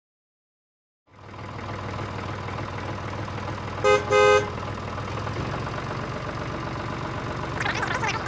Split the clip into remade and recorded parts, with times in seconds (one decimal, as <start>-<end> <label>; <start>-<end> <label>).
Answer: 0.0-8.3 recorded

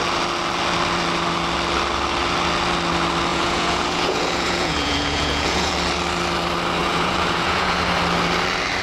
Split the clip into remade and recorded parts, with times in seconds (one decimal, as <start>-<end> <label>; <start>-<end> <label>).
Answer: 0.0-3.3 recorded; 3.3-5.7 remade; 5.7-6.8 recorded; 6.8-7.8 remade; 7.8-8.8 recorded

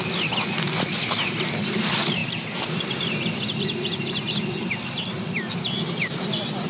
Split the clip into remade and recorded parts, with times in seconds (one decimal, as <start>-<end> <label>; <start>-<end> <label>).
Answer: 0.0-6.7 recorded

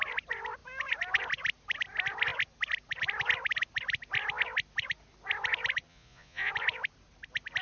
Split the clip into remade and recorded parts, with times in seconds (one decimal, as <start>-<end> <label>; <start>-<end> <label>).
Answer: 0.0-5.9 recorded; 5.9-6.5 remade; 6.5-7.6 recorded